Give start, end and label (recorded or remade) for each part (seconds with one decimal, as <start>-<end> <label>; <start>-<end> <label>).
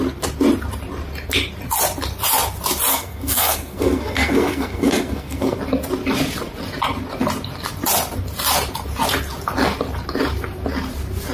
0.0-2.9 recorded; 2.9-5.6 remade; 5.6-11.3 recorded